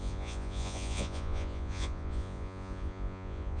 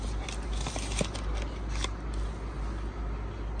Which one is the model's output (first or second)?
first